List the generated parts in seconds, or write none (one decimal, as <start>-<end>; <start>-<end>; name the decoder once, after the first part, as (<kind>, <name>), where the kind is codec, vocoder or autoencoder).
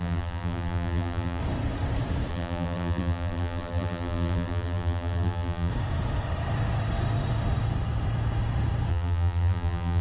0.0-1.4 (vocoder, BigVGAN v2); 2.3-5.7; 8.9-10.0